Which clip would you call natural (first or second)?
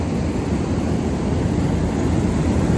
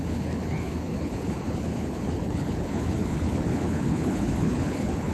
first